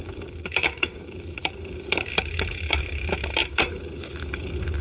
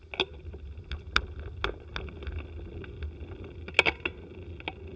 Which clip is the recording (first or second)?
second